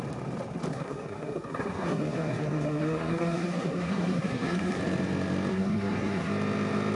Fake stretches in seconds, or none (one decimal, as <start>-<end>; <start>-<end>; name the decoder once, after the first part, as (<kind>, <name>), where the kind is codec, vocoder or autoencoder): 0.7-4.8 (codec, SNAC); 5.5-6.3